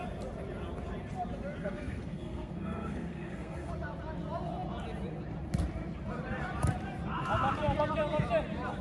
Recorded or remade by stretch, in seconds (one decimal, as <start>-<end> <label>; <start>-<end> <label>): 0.0-1.6 recorded; 1.6-3.7 remade; 3.7-8.8 recorded

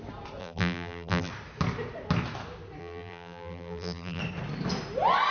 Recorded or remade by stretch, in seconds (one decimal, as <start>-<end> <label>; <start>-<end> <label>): 0.0-0.4 recorded; 0.4-1.3 remade; 1.3-2.8 recorded; 2.8-4.2 remade; 4.2-5.3 recorded

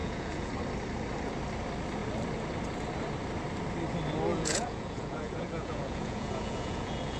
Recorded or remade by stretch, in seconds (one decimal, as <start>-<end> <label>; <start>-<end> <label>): 0.0-0.5 remade; 0.5-4.3 recorded; 4.3-7.2 remade

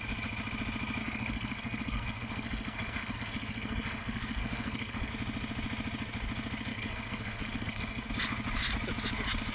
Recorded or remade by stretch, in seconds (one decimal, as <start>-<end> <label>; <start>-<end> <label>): 0.0-1.0 recorded; 1.0-5.1 remade; 5.1-6.7 recorded; 6.7-8.1 remade; 8.1-9.5 recorded

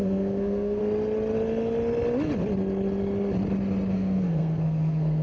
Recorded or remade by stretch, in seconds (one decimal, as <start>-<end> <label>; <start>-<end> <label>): 0.0-0.8 remade; 0.8-3.9 recorded; 3.9-5.2 remade

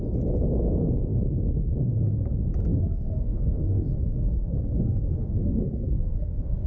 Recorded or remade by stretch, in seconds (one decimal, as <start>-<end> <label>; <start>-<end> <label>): 0.0-2.7 recorded; 2.7-6.7 remade